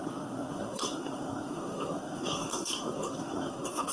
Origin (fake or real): fake